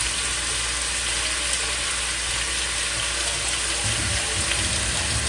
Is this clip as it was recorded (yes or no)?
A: yes